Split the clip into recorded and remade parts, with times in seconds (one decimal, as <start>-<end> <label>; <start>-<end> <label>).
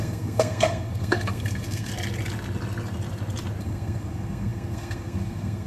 0.0-1.9 remade; 1.9-3.6 recorded; 3.6-5.7 remade